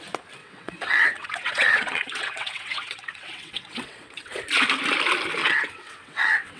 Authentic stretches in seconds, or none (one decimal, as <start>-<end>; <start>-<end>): 0.0-0.4; 4.4-5.4